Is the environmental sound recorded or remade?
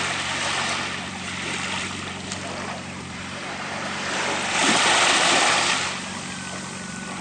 remade